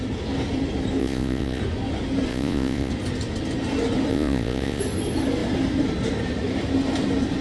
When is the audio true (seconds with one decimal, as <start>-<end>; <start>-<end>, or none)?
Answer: 0.0-1.0; 1.6-2.3; 2.9-4.1; 4.8-7.4